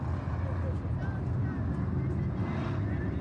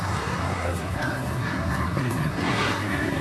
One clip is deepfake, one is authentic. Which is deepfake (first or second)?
second